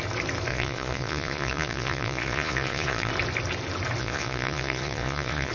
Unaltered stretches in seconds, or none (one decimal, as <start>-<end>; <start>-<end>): 0.0-0.5; 3.1-4.0